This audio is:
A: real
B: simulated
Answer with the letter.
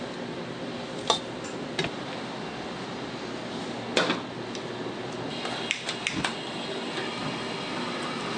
A